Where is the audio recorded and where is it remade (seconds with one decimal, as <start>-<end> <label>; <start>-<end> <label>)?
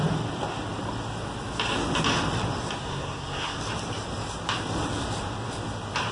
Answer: 0.0-2.8 recorded; 2.8-3.6 remade; 3.6-6.1 recorded